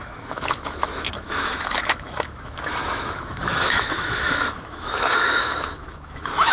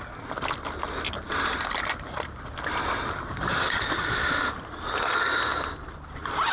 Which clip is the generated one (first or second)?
first